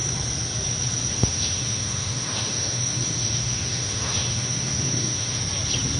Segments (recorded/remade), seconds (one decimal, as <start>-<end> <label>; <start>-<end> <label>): 0.0-1.1 recorded; 1.1-5.4 remade; 5.4-6.0 recorded